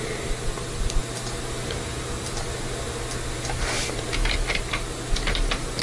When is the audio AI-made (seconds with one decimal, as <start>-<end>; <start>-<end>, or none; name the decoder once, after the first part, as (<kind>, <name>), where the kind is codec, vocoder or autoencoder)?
0.0-1.0 (vocoder, BigVGAN v2); 4.5-5.8